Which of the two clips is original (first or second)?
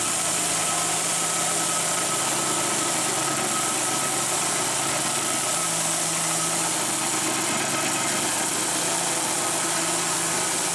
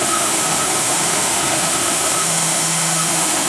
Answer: first